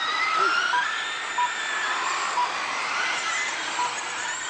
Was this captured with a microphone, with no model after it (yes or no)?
yes